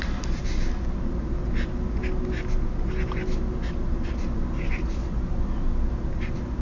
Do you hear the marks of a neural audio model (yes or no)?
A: no